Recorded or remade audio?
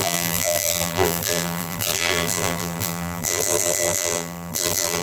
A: remade